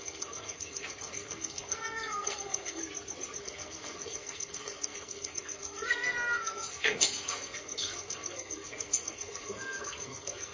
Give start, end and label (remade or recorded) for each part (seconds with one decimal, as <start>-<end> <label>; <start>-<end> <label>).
0.0-2.8 remade; 2.8-3.4 recorded; 3.4-10.5 remade